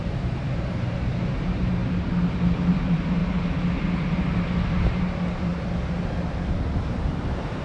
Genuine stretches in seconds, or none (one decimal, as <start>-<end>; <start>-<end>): 1.8-2.7; 3.2-4.7; 5.5-6.8